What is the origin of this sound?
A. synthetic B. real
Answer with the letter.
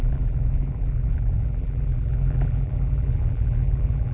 A